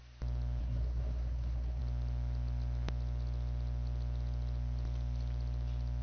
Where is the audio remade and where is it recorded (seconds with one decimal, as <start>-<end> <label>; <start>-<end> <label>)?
0.0-0.6 recorded; 0.6-1.8 remade; 1.8-6.0 recorded